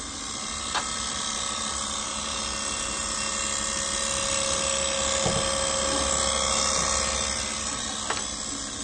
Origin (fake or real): real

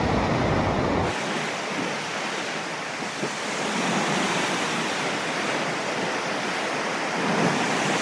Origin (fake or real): real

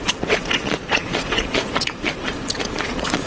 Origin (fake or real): fake